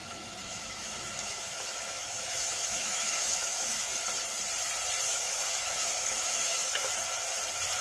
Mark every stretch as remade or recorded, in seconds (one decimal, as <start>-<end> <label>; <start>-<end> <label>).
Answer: 0.0-3.8 remade; 3.8-5.1 recorded; 5.1-6.9 remade; 6.9-7.8 recorded